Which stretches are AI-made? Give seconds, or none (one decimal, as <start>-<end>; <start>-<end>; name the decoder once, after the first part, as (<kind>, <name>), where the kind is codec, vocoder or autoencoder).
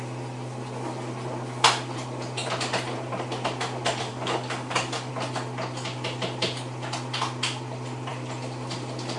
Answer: 4.1-5.1 (codec, DAC)